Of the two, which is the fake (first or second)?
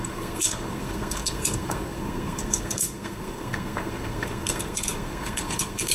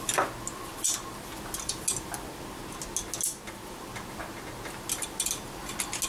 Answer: first